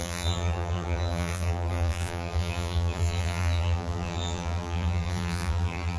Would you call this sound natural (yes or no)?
no